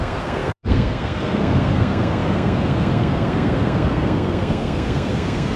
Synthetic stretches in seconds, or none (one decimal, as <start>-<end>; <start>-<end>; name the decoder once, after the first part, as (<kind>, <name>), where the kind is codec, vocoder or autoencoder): 0.0-5.6 (codec, SNAC)